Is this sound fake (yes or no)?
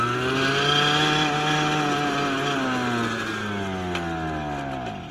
no